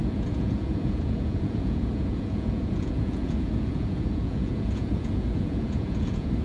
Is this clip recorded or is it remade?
remade